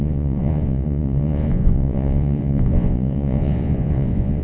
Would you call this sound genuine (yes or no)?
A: no